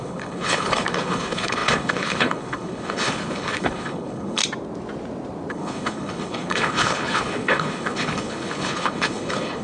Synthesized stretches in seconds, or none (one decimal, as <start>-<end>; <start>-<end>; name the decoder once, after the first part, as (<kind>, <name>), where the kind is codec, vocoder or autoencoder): 0.0-4.4 (codec, HILCodec); 5.5-9.6